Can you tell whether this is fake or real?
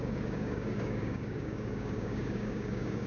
fake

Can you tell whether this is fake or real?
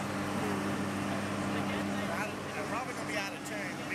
real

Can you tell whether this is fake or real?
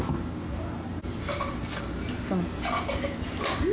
real